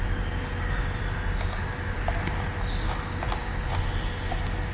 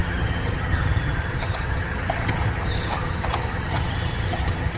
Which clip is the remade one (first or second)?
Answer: second